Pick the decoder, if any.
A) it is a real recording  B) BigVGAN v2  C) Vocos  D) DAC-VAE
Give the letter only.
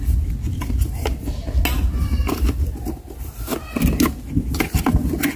A